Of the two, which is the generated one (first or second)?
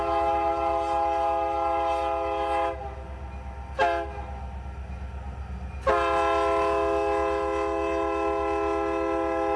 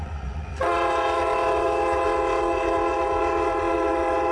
second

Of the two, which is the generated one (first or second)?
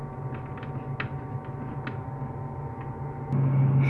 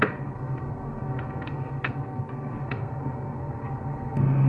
second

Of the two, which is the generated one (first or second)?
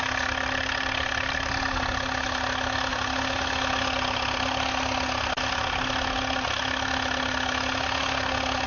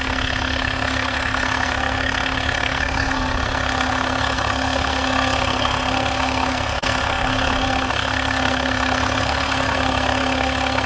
second